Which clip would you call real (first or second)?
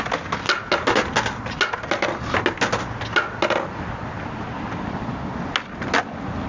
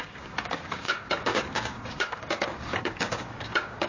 first